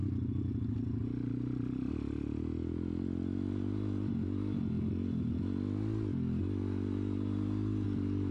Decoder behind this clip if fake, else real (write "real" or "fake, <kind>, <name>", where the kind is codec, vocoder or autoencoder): real